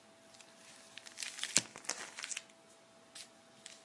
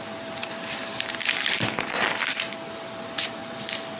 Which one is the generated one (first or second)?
second